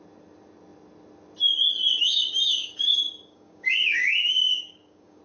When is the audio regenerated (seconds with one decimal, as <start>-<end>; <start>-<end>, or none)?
2.0-5.2